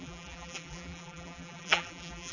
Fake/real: fake